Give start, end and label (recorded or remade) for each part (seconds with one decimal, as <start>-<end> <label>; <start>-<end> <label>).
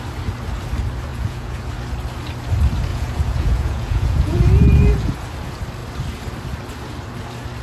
0.0-1.1 recorded; 1.1-1.7 remade; 1.7-2.9 recorded; 2.9-5.1 remade; 5.1-7.6 recorded